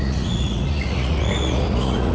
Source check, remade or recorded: remade